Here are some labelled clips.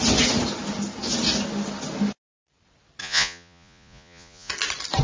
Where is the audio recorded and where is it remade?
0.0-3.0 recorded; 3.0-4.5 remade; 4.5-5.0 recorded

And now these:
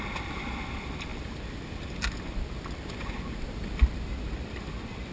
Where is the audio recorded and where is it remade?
0.0-5.1 recorded

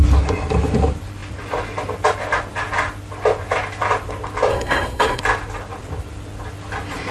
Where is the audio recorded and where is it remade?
0.0-4.5 recorded; 4.5-5.2 remade; 5.2-7.1 recorded

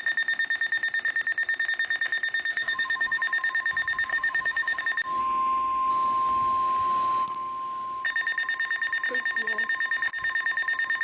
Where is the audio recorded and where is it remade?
0.0-2.5 recorded; 2.5-3.2 remade; 3.2-4.1 recorded; 4.1-4.8 remade; 4.8-5.2 recorded; 5.2-5.9 remade; 5.9-11.0 recorded

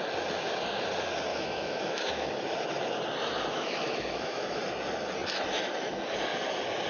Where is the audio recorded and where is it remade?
0.0-1.3 recorded; 1.3-2.3 remade; 2.3-3.5 recorded; 3.5-4.6 remade; 4.6-6.9 recorded

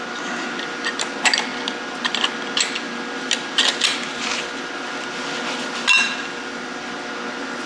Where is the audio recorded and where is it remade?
0.0-7.7 recorded